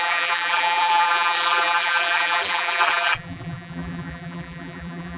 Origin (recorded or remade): remade